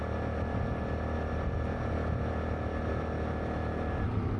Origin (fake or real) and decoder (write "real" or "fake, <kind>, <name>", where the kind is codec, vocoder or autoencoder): real